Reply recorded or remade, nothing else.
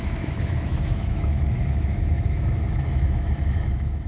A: remade